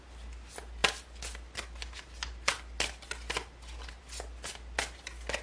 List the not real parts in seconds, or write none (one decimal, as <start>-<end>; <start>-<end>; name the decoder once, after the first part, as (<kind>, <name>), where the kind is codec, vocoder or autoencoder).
none